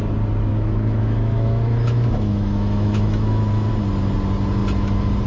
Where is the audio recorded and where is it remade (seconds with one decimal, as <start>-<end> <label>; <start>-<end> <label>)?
0.0-0.5 recorded; 0.5-3.7 remade; 3.7-5.3 recorded